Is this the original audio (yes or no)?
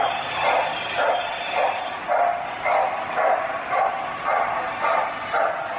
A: yes